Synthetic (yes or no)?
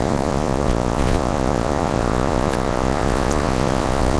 yes